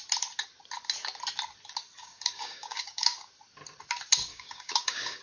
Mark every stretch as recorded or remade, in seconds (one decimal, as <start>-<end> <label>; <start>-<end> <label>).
0.0-2.0 recorded; 2.0-3.3 remade; 3.3-4.3 recorded; 4.3-5.2 remade